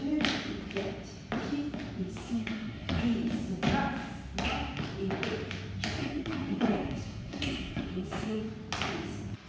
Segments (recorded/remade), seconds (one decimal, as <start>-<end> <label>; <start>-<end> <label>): 0.0-2.2 recorded; 2.2-3.0 remade; 3.0-6.0 recorded; 6.0-8.4 remade; 8.4-9.5 recorded